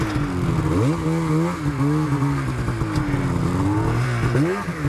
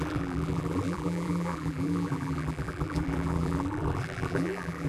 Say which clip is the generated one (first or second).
second